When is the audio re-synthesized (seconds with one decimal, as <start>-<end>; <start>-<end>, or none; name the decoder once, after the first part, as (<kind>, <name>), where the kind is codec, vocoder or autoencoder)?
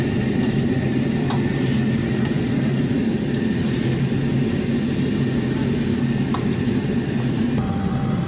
0.0-3.0 (vocoder, BigVGAN v2); 6.3-8.3